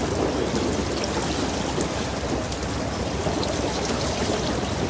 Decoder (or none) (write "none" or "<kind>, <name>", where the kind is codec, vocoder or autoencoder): none